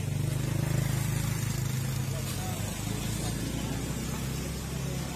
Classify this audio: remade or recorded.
recorded